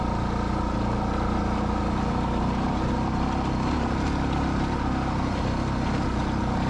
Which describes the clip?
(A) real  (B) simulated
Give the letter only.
A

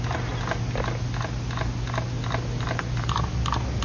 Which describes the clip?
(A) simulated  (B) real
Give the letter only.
B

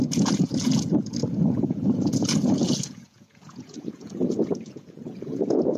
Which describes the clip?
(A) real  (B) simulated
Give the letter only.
B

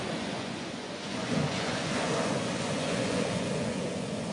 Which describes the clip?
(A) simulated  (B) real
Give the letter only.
A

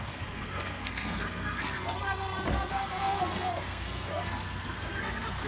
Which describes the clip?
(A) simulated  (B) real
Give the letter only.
A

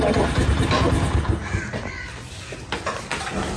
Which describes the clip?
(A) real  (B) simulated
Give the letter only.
A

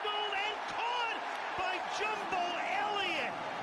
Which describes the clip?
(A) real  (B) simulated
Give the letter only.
A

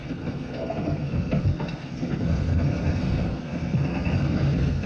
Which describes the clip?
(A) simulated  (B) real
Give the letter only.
A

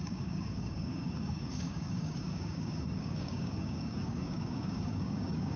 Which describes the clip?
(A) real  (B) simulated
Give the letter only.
B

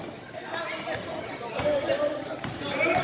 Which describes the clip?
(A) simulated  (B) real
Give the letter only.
B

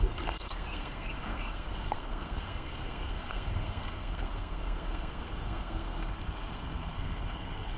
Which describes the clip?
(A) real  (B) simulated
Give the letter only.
B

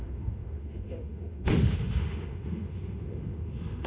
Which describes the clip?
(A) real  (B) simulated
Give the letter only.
B